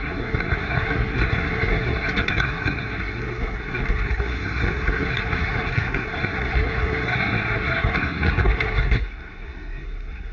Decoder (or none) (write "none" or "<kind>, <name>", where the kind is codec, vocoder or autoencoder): codec, SNAC